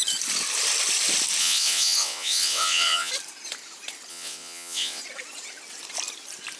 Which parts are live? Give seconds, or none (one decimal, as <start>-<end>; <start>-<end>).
0.0-1.4; 3.1-4.1; 5.0-6.6